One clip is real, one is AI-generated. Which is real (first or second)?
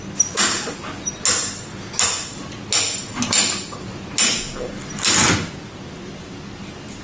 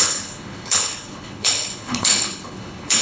first